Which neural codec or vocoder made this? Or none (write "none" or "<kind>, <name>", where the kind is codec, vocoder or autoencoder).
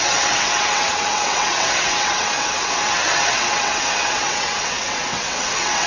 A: vocoder, WaveNeXt